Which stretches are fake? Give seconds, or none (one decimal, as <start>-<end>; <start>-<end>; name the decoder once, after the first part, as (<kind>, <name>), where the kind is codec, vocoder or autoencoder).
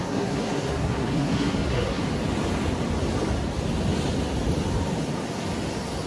0.0-2.0 (codec, SNAC)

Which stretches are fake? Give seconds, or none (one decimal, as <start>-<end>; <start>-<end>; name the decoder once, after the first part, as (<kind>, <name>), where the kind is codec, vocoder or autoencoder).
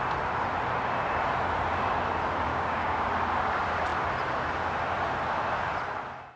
2.5-3.1 (codec, DAC)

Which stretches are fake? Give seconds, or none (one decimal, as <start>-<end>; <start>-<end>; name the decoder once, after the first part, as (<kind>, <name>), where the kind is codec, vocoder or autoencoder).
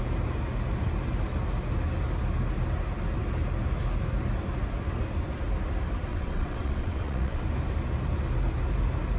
6.1-7.4 (vocoder, WaveNeXt)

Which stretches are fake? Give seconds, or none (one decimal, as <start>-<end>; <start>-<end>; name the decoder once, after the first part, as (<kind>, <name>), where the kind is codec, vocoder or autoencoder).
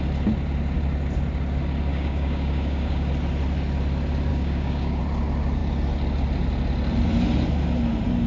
1.9-3.1 (codec, DAC); 4.3-5.0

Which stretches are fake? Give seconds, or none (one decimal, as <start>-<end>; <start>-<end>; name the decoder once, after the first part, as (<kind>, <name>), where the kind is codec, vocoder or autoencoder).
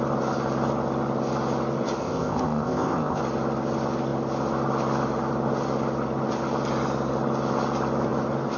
2.0-3.2 (codec, ZipCodec)